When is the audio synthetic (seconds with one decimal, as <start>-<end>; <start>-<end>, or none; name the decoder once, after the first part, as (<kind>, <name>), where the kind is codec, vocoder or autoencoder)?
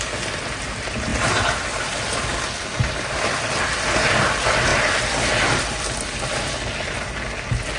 none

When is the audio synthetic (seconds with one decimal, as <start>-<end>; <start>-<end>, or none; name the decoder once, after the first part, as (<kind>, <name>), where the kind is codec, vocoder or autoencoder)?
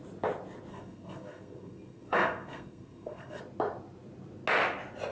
0.7-3.4 (codec, SNAC)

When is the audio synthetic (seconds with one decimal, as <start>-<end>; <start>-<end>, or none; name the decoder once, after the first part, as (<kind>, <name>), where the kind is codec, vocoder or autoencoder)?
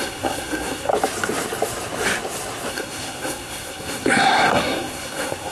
0.0-0.9 (codec, SNAC); 2.7-5.5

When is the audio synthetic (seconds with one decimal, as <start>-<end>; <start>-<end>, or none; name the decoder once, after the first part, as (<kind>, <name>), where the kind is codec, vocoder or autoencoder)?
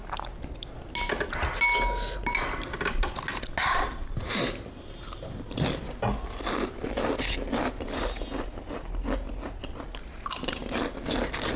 none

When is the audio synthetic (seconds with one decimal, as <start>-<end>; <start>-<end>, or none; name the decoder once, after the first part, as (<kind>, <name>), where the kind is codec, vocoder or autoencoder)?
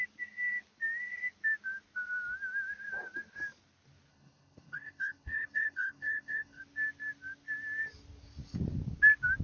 4.1-6.6 (codec, HILCodec)